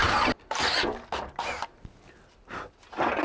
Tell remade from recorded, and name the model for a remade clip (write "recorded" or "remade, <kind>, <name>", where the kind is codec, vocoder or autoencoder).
recorded